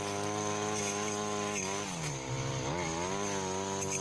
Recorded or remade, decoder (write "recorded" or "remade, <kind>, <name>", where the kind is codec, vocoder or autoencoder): recorded